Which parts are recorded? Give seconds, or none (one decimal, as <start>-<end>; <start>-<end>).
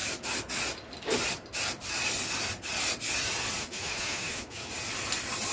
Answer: 0.0-3.6; 4.7-5.5